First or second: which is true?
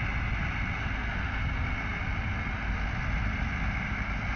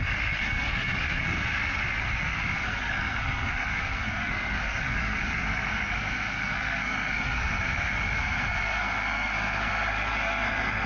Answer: first